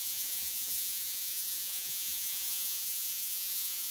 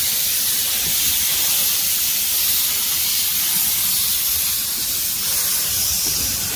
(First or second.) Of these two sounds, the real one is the second